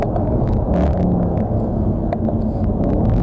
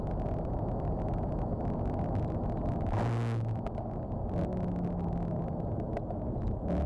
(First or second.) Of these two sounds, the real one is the second